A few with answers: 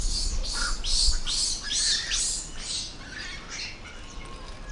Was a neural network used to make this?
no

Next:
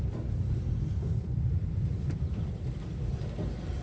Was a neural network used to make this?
yes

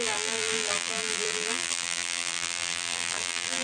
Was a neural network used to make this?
yes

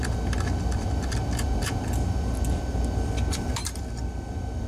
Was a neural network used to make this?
yes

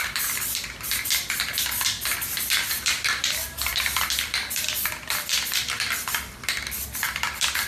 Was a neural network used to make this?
yes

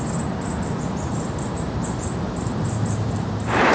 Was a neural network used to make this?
yes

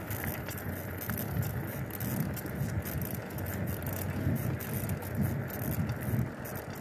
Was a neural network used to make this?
no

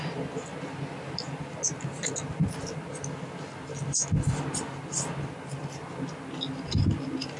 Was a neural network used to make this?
no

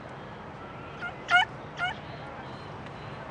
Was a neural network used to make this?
no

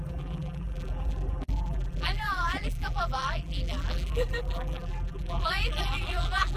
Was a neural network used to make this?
yes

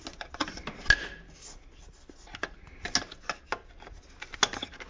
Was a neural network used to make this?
no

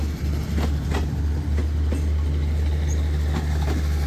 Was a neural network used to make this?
no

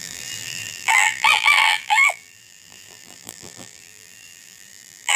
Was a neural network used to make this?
yes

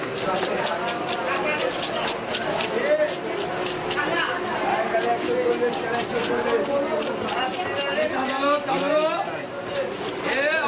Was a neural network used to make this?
no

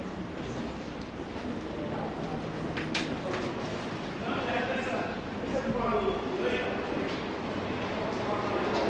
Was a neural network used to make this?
no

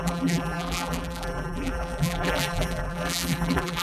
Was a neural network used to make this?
yes